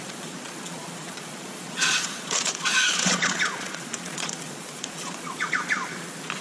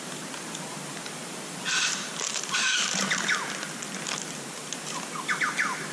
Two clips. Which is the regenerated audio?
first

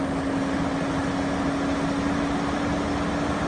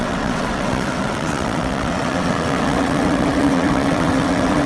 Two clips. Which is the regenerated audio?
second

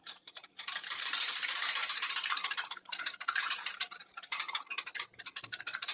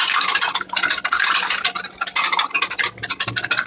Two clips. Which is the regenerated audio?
first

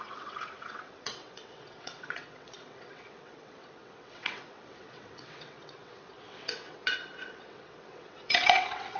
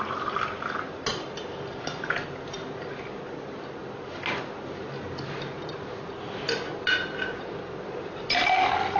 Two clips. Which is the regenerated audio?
first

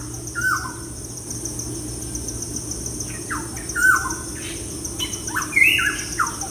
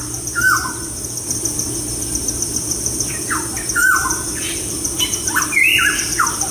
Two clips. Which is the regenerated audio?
second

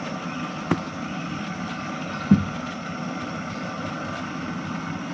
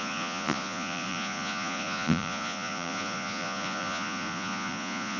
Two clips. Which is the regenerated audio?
second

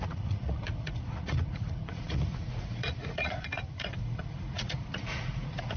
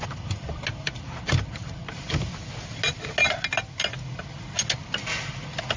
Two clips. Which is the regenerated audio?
first